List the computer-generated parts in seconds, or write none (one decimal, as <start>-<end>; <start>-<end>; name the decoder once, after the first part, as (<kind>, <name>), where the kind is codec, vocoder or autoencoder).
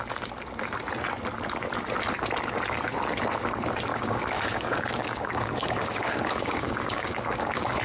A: 3.9-7.8 (codec, DAC)